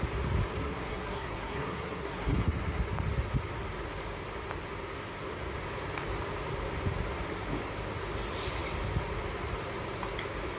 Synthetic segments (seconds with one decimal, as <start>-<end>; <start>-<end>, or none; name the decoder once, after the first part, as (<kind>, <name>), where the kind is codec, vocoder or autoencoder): 0.6-2.8 (codec, SNAC)